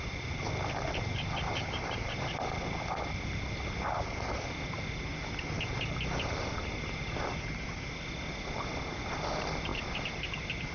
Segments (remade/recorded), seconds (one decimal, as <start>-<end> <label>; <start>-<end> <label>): 0.0-10.7 recorded